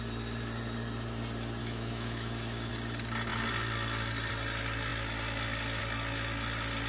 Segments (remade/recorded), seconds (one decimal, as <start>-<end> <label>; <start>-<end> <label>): 0.0-1.6 recorded; 1.6-2.7 remade; 2.7-6.9 recorded